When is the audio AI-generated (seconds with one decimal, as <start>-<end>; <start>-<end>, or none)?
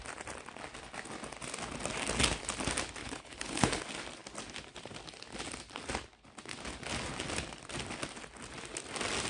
3.0-3.8